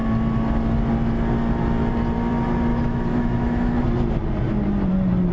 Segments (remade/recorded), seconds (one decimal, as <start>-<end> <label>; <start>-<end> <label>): 0.0-2.7 recorded; 2.7-3.8 remade; 3.8-5.3 recorded